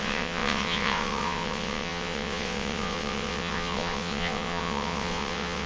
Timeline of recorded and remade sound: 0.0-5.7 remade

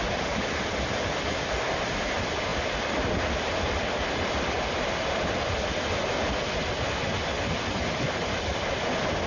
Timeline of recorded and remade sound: 0.0-9.3 recorded

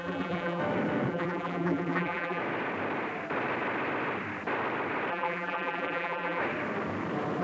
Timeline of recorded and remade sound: 0.0-0.6 remade; 0.6-1.1 recorded; 1.1-2.4 remade; 2.4-5.1 recorded; 5.1-6.4 remade; 6.4-7.4 recorded

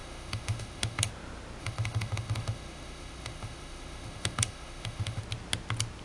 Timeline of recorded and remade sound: 0.0-1.1 remade; 1.1-1.6 recorded; 1.6-5.2 remade; 5.2-6.0 recorded

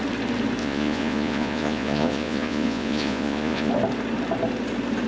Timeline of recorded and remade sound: 0.0-0.6 recorded; 0.6-3.7 remade; 3.7-5.1 recorded

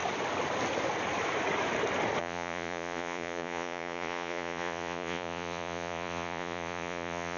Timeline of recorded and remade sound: 0.0-2.2 recorded; 2.2-7.4 remade

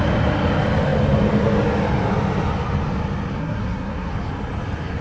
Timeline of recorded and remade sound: 0.0-3.4 recorded; 3.4-4.1 remade; 4.1-5.0 recorded